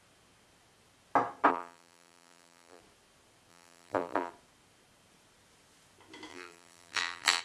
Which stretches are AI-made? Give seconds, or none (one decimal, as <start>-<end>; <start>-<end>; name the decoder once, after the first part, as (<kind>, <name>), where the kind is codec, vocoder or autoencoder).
1.5-2.8 (vocoder, BigVGAN v2); 3.5-4.3; 6.3-7.4